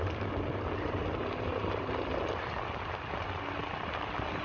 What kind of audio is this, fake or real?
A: real